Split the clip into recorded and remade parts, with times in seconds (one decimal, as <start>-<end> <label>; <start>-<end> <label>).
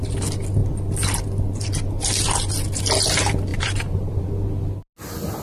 0.0-3.5 recorded; 3.5-4.3 remade; 4.3-5.4 recorded